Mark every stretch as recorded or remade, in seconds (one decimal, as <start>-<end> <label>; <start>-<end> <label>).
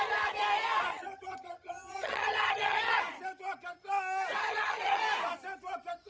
0.0-0.9 recorded; 0.9-3.0 remade; 3.0-4.4 recorded; 4.4-5.0 remade; 5.0-6.1 recorded